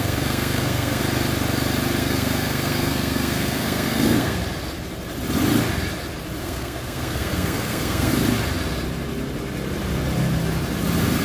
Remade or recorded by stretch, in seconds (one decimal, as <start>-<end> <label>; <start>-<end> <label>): 0.0-1.0 remade; 1.0-2.0 recorded; 2.0-4.4 remade; 4.4-6.4 recorded; 6.4-8.1 remade; 8.1-11.2 recorded